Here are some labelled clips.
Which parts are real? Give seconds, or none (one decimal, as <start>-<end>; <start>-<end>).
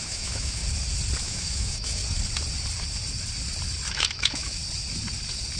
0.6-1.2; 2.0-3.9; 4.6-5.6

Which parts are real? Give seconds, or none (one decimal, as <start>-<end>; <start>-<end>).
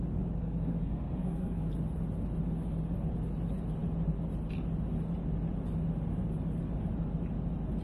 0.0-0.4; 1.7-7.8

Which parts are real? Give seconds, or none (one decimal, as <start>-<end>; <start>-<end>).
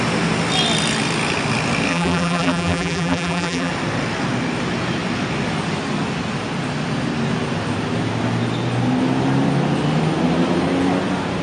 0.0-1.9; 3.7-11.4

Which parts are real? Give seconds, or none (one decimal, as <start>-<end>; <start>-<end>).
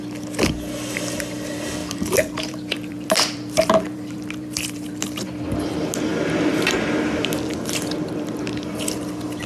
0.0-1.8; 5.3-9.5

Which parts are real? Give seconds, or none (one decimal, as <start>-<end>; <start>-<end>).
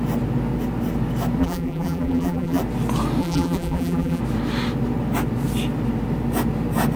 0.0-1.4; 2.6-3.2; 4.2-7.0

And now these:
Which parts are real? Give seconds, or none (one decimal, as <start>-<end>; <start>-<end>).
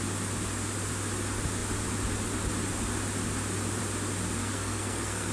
0.0-4.4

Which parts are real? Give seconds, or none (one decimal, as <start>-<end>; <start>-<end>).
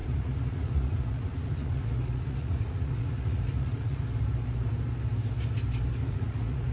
4.0-6.0